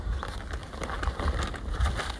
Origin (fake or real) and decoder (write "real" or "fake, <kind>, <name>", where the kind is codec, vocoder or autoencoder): real